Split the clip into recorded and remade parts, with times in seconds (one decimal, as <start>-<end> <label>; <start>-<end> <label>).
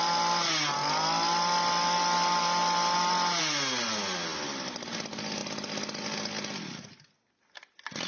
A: 0.0-8.1 recorded